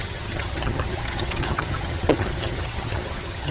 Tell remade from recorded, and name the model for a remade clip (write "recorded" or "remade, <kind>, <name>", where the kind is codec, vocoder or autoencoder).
remade, vocoder, HiFi-GAN